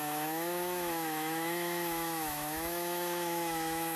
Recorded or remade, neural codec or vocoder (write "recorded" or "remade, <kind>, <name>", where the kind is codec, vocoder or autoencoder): remade, autoencoder, DAC-VAE